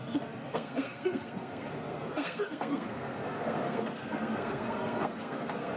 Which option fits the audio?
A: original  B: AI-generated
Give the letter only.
B